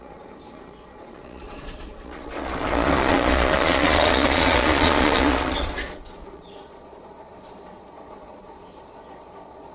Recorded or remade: remade